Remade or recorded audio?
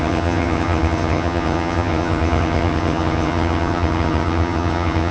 remade